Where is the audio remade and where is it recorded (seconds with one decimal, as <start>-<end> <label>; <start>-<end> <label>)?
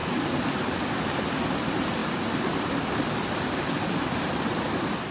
0.0-5.1 recorded